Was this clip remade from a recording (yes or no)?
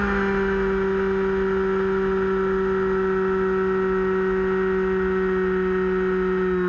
no